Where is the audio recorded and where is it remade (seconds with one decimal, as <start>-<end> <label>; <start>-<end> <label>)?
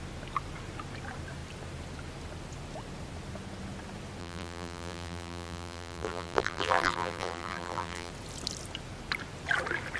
0.0-4.2 recorded; 4.2-8.1 remade; 8.1-10.0 recorded